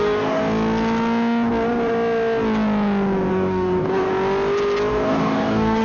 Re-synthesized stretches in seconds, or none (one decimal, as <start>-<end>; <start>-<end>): 0.0-0.4; 3.3-4.1; 4.9-5.8